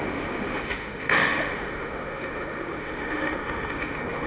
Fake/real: fake